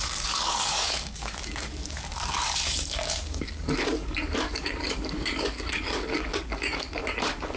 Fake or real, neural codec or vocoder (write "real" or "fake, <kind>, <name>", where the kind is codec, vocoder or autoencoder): fake, codec, DAC